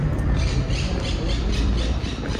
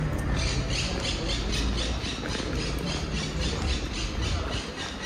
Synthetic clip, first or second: first